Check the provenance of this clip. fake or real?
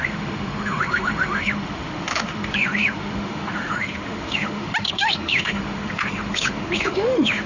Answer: fake